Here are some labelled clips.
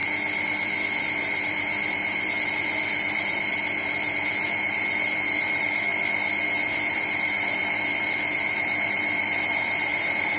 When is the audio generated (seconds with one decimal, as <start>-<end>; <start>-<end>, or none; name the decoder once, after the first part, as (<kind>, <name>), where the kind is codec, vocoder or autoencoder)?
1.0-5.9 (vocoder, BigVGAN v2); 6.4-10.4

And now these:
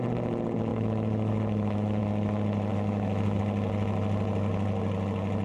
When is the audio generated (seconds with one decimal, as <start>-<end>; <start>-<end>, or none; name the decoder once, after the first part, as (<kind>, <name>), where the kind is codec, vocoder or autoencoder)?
0.7-2.0 (autoencoder, DAC-VAE); 2.7-3.4

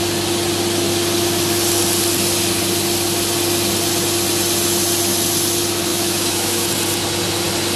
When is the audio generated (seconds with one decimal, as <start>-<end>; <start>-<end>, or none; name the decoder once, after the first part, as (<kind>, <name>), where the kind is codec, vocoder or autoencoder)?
5.9-6.7 (autoencoder, DAC-VAE)